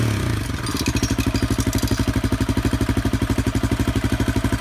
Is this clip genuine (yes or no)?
yes